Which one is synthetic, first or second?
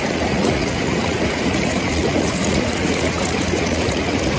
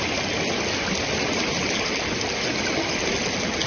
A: first